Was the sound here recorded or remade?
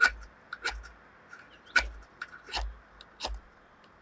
recorded